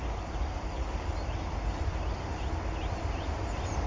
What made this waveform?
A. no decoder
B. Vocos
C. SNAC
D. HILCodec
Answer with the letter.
A